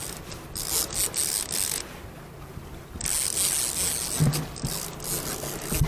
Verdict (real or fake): real